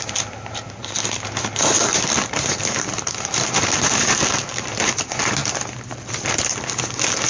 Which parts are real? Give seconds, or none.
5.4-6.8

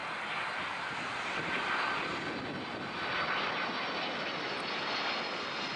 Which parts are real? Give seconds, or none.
0.0-0.6; 2.1-5.8

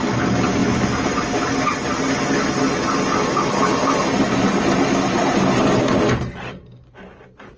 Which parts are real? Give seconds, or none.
0.0-7.6

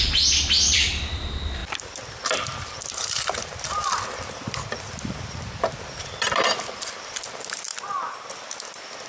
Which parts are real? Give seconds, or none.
7.7-8.3

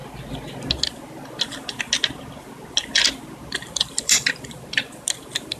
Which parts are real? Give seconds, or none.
0.0-3.4

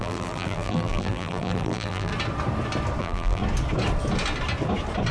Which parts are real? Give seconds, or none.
2.1-3.0; 3.4-5.1

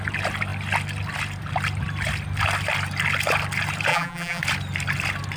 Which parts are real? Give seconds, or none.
0.0-3.9; 4.4-5.4